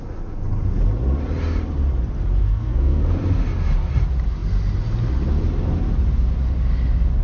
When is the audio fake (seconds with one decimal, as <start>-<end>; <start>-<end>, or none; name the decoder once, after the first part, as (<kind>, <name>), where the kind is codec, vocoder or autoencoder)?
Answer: 2.4-3.1 (codec, SNAC)